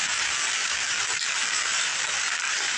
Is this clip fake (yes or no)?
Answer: yes